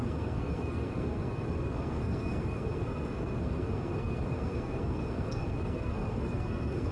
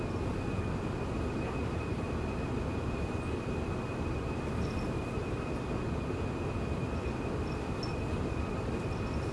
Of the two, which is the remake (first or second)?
first